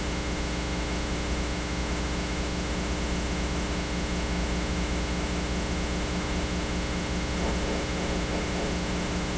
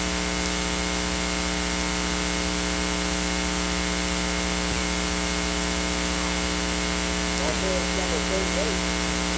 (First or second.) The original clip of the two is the second